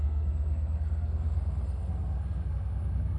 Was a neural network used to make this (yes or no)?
yes